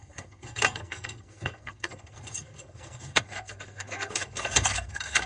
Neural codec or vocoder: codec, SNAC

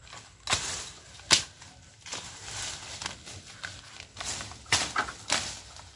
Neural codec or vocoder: none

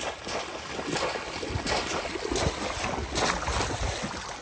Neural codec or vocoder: none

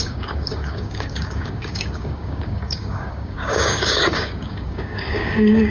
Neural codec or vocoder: codec, DAC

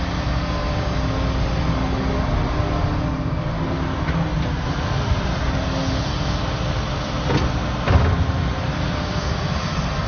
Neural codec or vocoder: none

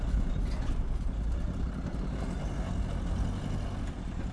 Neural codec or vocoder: none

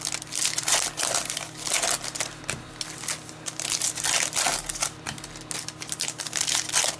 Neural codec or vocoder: none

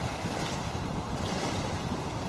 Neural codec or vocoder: vocoder, BigVGAN v2